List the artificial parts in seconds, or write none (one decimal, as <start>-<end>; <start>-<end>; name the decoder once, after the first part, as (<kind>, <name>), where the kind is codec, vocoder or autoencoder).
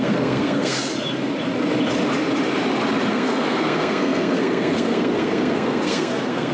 0.0-0.9 (codec, SNAC); 3.1-6.5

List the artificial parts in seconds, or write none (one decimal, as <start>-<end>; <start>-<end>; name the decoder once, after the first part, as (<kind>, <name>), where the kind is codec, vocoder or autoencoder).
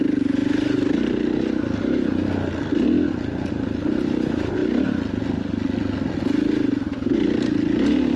none